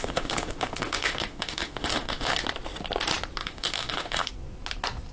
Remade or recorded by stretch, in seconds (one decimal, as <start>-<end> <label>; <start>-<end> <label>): 0.0-2.4 remade; 2.4-3.4 recorded; 3.4-4.3 remade; 4.3-5.1 recorded